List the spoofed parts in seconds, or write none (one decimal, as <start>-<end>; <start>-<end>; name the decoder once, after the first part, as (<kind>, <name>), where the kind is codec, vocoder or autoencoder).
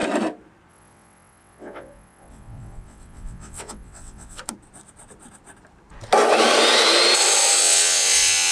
0.7-4.4 (vocoder, WaveNeXt); 7.6-8.5